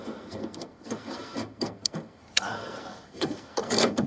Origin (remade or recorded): remade